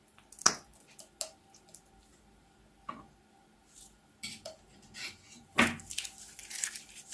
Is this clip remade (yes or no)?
no